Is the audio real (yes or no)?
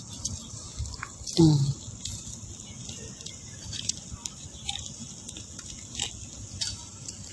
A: yes